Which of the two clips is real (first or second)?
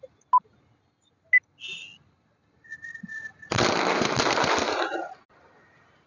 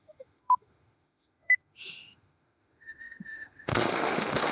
first